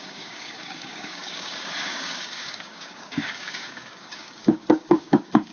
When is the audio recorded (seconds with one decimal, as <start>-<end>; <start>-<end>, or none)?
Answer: none

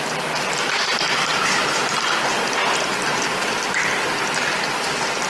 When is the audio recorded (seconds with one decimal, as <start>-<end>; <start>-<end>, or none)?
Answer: 1.3-4.5

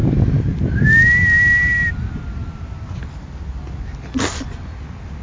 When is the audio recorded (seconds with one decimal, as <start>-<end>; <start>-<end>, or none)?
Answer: 0.0-5.2

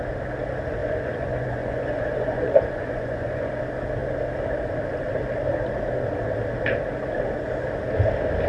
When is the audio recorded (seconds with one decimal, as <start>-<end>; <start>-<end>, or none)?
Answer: 0.0-0.8; 3.5-8.5

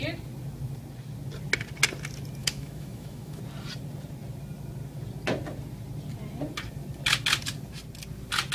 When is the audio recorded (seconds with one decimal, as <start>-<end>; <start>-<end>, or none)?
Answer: 0.0-2.4; 3.4-8.5

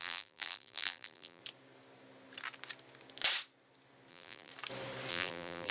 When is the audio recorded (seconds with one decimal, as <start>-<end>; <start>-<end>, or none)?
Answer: 1.4-4.1; 4.5-5.1